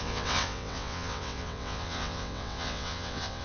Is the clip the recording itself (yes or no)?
no